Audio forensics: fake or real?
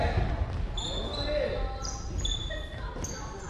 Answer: real